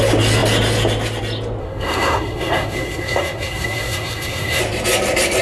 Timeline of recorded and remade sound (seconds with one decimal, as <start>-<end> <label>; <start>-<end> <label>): 0.0-1.6 recorded; 1.6-4.6 remade; 4.6-5.4 recorded